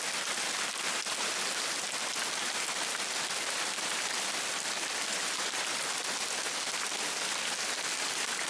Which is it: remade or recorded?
recorded